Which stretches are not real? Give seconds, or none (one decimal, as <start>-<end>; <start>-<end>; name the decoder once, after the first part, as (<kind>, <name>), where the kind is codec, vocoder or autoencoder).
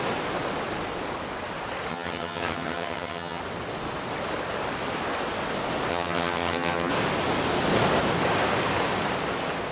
1.9-3.4 (vocoder, HiFi-GAN); 5.9-6.9